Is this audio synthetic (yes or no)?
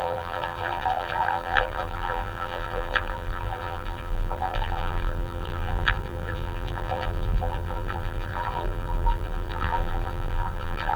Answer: yes